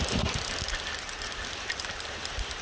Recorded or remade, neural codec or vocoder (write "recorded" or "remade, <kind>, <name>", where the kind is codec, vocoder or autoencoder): recorded